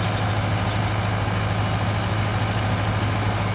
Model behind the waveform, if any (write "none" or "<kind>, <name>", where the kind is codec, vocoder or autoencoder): none